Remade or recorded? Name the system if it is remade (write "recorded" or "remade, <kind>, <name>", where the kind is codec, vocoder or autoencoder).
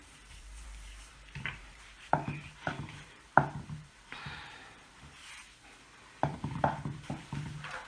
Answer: remade, vocoder, BigVGAN v2